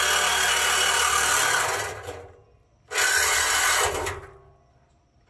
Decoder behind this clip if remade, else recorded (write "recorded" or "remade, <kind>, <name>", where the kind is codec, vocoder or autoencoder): recorded